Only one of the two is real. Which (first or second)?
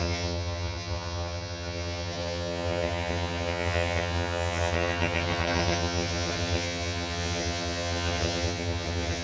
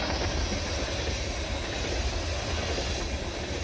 second